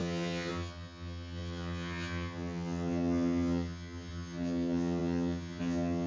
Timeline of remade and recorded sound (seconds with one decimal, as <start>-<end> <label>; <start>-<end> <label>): 0.0-6.1 remade